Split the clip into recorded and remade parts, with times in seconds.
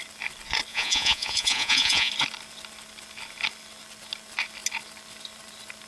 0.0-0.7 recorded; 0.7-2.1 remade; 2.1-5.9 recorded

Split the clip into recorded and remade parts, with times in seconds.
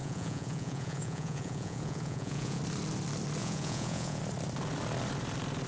0.0-2.6 remade; 2.6-3.4 recorded; 3.4-4.2 remade; 4.2-5.7 recorded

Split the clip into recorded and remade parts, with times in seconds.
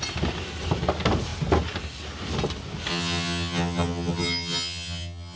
0.0-2.9 recorded; 2.9-5.4 remade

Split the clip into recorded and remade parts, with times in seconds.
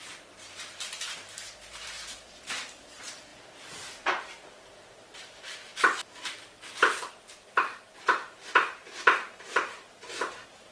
0.0-5.7 remade; 5.7-7.2 recorded; 7.2-10.7 remade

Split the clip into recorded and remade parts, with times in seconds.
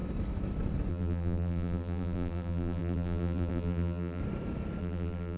0.0-0.9 recorded; 0.9-4.2 remade; 4.2-4.8 recorded; 4.8-5.4 remade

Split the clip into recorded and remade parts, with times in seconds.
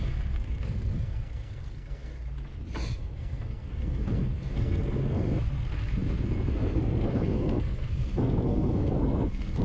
0.0-2.1 remade; 2.1-3.0 recorded; 3.0-9.6 remade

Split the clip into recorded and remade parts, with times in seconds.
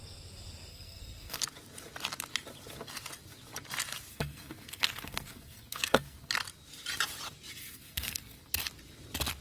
0.0-0.7 recorded; 0.7-1.4 remade; 1.4-4.1 recorded; 4.1-6.3 remade; 6.3-7.6 recorded; 7.6-8.5 remade; 8.5-9.4 recorded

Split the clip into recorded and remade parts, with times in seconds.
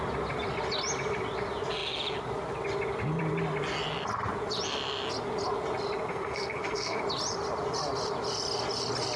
0.0-6.1 recorded; 6.1-7.0 remade; 7.0-9.2 recorded